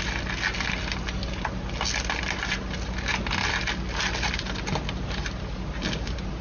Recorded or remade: recorded